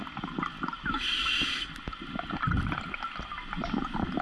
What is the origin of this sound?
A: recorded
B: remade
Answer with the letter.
A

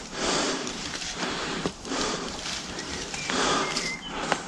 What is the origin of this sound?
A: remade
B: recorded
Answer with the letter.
A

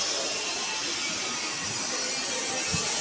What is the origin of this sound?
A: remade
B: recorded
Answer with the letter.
B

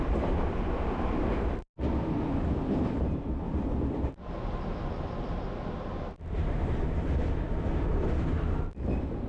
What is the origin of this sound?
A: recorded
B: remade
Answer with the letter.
B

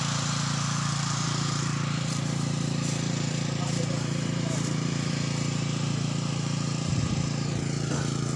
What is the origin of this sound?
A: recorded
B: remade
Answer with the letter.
B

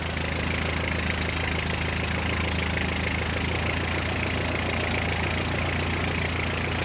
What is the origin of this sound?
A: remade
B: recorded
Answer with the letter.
B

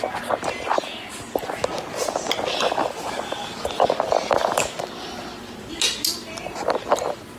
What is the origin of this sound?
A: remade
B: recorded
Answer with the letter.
B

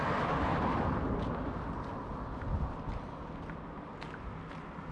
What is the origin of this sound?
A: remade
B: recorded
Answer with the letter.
B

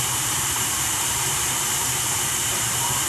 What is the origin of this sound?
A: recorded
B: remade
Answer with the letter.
B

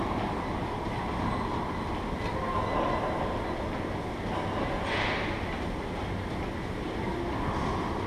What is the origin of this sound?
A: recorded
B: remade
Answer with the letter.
A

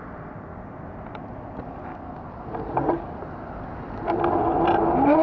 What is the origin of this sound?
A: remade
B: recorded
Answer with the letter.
B